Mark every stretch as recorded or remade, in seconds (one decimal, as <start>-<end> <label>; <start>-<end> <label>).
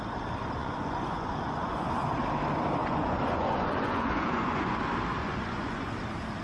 0.0-0.6 recorded; 0.6-1.9 remade; 1.9-2.8 recorded; 2.8-4.8 remade; 4.8-5.2 recorded; 5.2-5.9 remade; 5.9-6.4 recorded